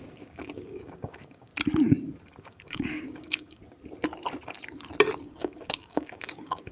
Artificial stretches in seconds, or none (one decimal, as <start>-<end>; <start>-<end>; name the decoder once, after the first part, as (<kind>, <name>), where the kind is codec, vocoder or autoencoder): 0.0-1.5 (codec, DAC); 2.4-3.6; 5.2-6.7